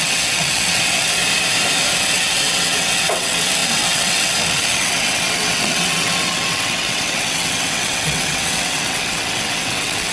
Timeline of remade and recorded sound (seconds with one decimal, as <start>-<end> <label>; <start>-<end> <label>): 0.0-1.2 remade; 1.2-2.0 recorded; 2.0-10.1 remade